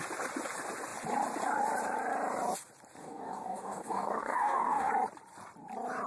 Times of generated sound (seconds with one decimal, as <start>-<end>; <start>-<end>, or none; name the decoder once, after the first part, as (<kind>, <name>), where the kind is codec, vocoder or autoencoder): 3.0-4.9 (codec, DAC)